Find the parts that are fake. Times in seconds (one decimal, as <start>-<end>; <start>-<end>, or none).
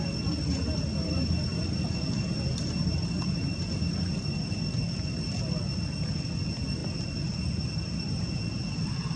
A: none